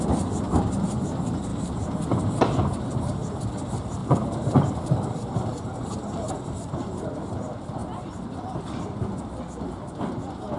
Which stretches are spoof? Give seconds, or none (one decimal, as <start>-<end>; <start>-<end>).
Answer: 1.5-3.3; 4.0-7.2